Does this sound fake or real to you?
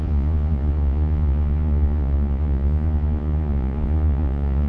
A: fake